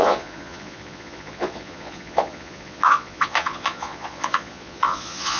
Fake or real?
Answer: fake